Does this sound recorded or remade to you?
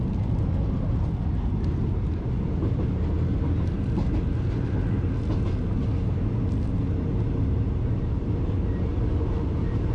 recorded